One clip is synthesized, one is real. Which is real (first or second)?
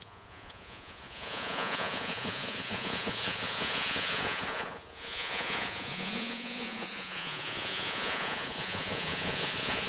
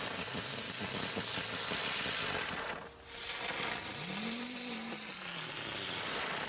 second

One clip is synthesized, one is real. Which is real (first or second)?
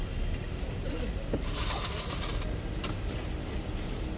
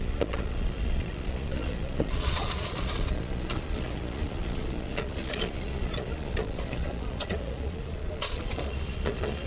first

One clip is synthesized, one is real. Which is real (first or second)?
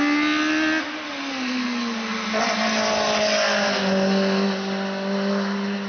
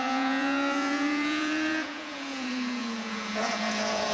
first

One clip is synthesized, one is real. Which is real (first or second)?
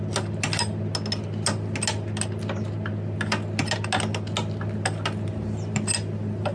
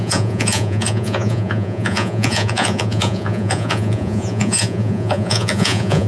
first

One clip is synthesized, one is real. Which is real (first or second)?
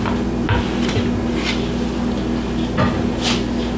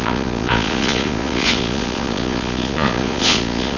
first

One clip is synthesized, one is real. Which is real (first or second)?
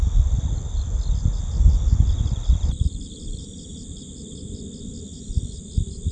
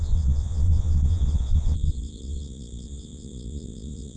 first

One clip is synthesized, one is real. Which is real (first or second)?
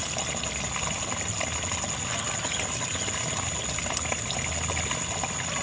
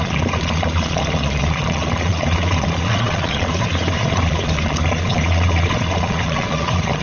first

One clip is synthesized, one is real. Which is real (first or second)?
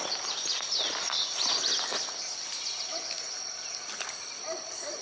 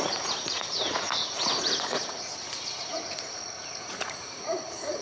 first